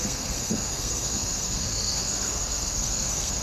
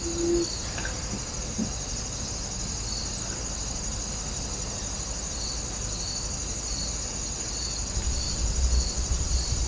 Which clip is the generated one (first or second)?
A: first